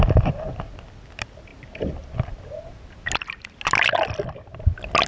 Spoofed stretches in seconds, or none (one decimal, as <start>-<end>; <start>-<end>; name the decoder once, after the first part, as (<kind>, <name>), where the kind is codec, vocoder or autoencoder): none